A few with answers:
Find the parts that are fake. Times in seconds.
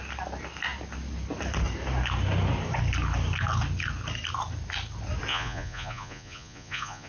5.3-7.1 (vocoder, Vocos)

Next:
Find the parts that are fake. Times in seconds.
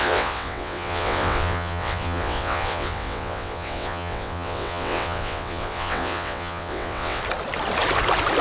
0.0-7.2 (vocoder, WaveNeXt)